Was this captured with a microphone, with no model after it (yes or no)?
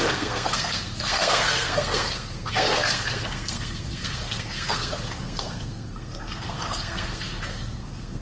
no